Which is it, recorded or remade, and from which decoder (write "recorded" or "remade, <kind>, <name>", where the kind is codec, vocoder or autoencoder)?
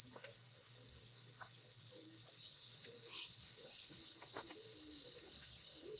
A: remade, codec, HILCodec